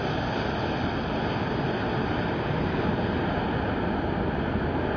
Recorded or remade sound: recorded